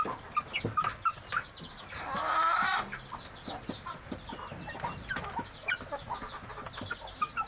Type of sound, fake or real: real